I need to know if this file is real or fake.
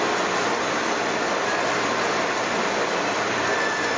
real